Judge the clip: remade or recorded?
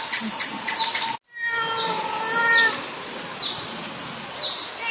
recorded